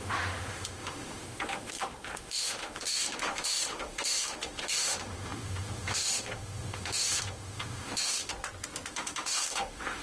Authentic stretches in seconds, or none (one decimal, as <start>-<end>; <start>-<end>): 8.3-8.9